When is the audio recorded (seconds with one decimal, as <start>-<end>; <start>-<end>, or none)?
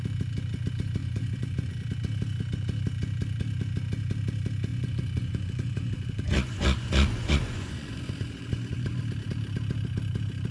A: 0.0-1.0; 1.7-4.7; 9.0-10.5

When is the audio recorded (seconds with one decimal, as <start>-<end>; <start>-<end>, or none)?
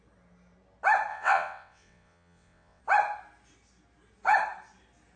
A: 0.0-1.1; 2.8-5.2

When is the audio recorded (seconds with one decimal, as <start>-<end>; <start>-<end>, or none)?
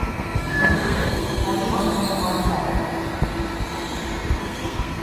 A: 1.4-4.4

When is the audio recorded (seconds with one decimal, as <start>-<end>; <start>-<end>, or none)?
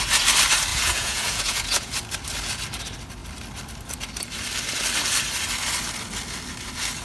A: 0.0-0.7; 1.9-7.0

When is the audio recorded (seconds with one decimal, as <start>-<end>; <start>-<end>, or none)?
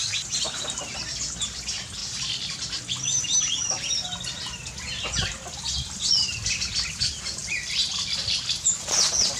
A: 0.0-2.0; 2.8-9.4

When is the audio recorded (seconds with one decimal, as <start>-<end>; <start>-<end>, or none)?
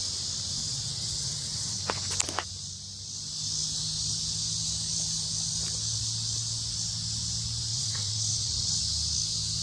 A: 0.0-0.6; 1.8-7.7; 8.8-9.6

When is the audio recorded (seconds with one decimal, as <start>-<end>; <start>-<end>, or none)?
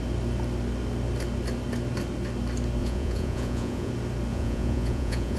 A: 0.0-2.8; 3.9-4.3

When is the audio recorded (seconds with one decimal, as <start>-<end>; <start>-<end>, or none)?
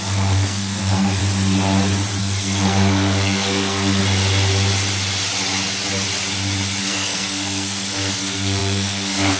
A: 1.2-2.2; 4.0-6.8